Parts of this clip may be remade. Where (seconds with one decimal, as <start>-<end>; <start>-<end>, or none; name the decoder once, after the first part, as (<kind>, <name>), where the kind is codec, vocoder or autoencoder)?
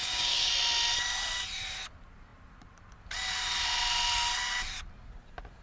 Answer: 0.0-0.5 (codec, DAC)